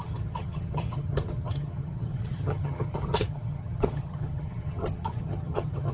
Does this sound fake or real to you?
fake